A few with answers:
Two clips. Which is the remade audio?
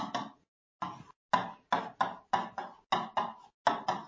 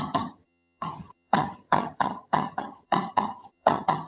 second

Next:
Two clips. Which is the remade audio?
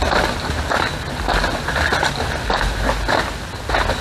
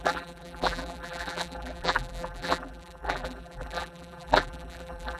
second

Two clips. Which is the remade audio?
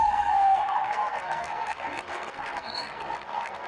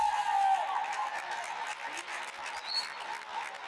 first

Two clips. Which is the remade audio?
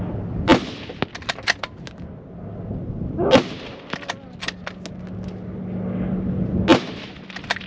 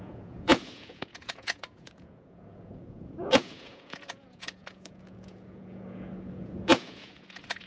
second